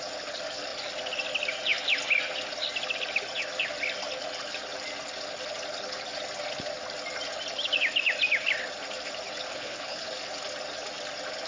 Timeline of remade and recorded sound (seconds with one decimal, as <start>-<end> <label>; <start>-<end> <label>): 0.0-9.5 recorded; 9.5-10.1 remade; 10.1-11.5 recorded